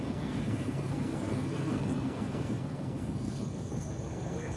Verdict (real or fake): fake